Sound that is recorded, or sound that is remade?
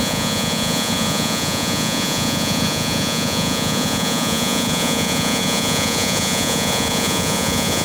remade